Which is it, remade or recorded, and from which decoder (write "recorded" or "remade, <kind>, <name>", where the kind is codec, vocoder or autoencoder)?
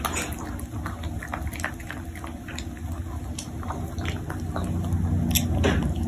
recorded